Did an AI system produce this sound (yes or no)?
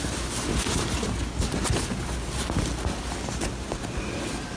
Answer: no